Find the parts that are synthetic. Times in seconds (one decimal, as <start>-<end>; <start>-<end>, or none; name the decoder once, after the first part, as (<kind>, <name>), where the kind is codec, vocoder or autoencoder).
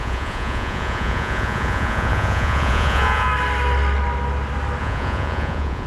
0.0-3.3 (vocoder, Vocos); 4.8-5.9